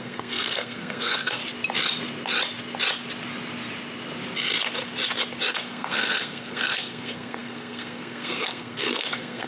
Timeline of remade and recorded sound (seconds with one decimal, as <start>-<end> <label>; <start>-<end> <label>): 0.0-1.4 remade; 1.4-5.5 recorded; 5.5-9.5 remade